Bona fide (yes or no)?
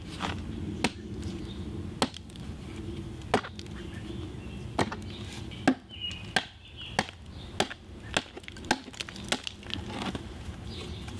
yes